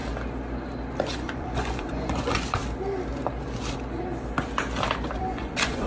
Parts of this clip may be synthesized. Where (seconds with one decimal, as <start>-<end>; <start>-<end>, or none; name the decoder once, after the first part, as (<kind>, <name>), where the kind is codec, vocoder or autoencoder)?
1.0-2.6 (vocoder, Vocos); 5.2-5.9

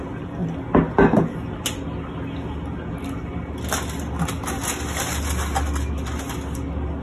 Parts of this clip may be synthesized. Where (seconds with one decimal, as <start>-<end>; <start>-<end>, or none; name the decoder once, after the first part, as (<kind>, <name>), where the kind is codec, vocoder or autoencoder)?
none

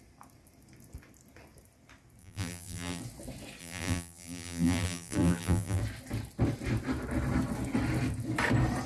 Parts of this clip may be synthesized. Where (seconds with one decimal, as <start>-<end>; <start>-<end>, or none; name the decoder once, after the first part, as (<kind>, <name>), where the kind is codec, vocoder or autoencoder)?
2.2-3.0 (vocoder, BigVGAN v2); 3.6-5.8

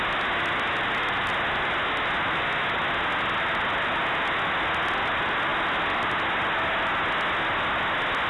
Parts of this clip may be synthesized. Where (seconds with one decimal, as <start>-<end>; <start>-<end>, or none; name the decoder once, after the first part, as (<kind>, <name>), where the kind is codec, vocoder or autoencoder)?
none

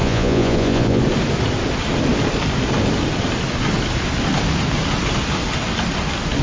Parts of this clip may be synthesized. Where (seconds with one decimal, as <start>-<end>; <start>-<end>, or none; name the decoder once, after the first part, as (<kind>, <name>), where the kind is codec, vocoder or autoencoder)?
0.0-1.0 (vocoder, Vocos)